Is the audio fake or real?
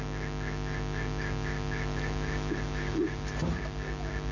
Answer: real